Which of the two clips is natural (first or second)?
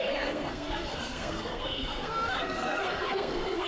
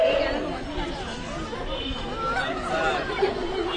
second